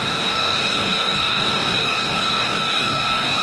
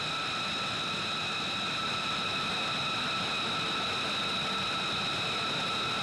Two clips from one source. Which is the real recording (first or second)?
second